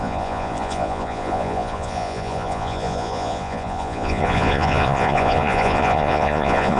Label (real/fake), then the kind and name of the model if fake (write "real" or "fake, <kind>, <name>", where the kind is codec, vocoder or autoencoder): fake, vocoder, Vocos